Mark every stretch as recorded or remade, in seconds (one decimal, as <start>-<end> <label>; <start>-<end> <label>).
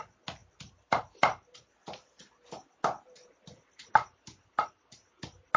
0.0-5.6 recorded